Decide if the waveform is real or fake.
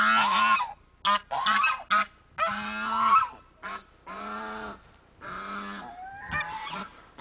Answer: real